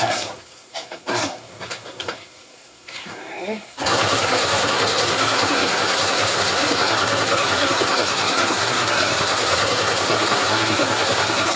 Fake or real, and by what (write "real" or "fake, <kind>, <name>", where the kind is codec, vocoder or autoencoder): fake, codec, SNAC